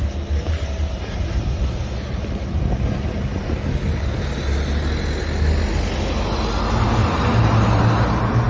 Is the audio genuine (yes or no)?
yes